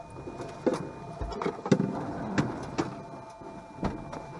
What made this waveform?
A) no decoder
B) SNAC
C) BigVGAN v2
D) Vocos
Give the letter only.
A